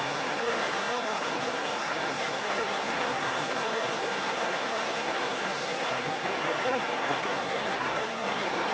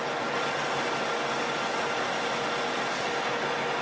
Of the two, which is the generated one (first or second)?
first